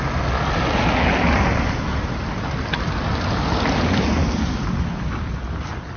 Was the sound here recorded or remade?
recorded